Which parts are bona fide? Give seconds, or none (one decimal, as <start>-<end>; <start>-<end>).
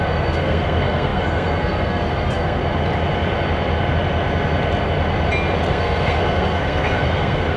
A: 2.6-5.7